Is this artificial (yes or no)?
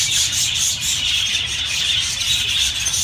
no